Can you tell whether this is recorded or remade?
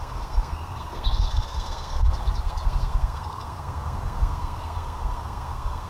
remade